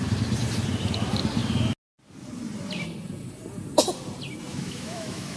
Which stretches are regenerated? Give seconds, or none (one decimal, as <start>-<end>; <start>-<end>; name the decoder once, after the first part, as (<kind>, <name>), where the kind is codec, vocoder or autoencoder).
4.5-5.4 (autoencoder, DAC-VAE)